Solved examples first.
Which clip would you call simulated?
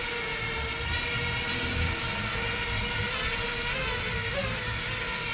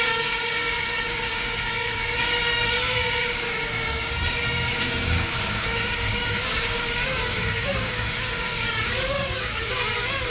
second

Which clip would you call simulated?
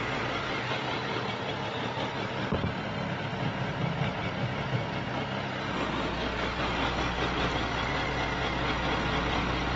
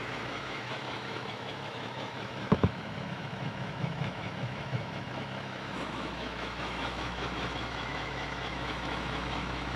second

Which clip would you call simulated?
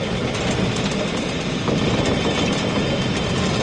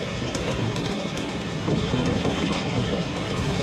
second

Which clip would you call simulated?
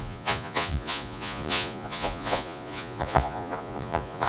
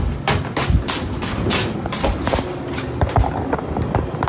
first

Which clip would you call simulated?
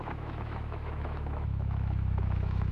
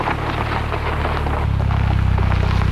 first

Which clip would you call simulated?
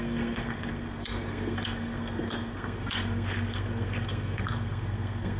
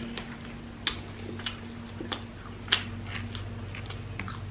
first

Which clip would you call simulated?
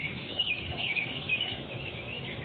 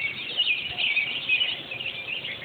first